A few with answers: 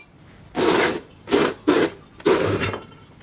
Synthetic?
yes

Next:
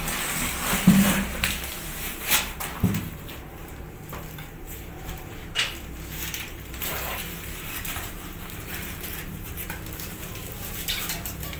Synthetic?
yes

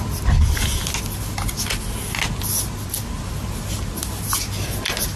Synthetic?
no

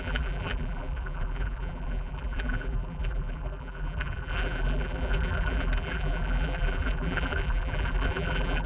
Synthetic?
yes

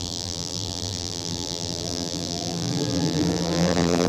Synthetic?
yes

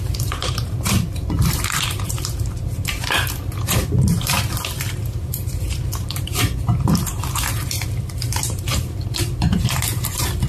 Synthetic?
yes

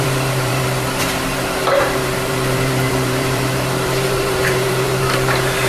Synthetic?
yes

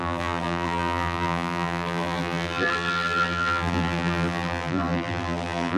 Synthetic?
yes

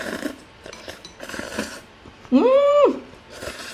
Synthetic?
yes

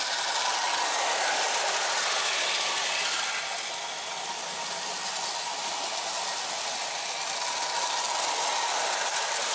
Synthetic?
no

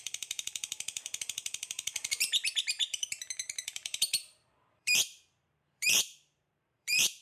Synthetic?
yes